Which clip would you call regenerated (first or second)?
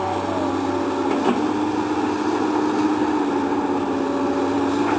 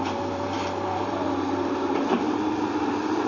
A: second